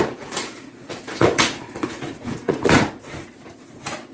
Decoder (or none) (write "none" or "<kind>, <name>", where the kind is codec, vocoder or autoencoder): vocoder, Vocos